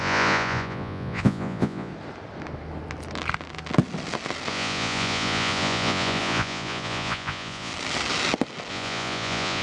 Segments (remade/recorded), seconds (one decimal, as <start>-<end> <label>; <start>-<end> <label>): 0.0-1.9 remade; 1.9-4.5 recorded; 4.5-7.7 remade; 7.7-8.7 recorded; 8.7-9.6 remade